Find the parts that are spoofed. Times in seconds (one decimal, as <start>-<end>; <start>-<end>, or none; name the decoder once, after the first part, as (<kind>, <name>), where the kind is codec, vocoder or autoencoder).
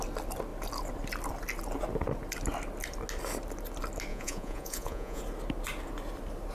4.1-5.2 (vocoder, Vocos)